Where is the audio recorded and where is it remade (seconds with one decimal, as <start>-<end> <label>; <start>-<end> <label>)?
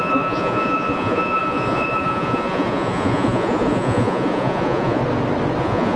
0.0-5.0 remade; 5.0-5.6 recorded; 5.6-6.0 remade